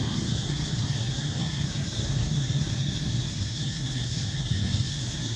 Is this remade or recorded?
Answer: remade